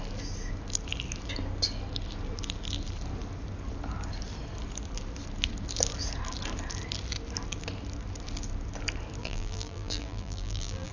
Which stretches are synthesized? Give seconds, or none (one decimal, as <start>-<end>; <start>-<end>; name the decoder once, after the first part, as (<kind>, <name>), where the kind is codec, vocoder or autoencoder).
9.2-10.9 (vocoder, BigVGAN v2)